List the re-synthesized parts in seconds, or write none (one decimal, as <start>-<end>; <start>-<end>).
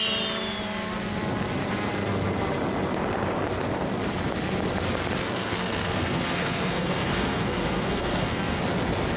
5.2-8.6